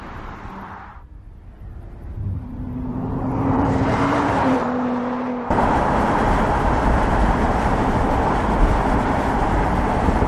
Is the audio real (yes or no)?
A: no